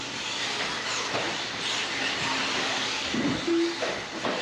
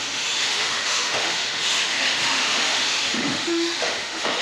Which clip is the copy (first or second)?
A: second